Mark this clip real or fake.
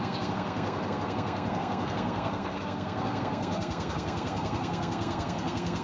fake